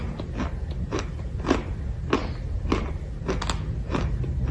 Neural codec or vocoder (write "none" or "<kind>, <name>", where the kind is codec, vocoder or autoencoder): none